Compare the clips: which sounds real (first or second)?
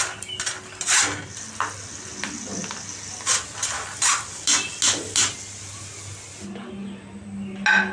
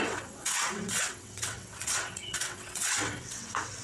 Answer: first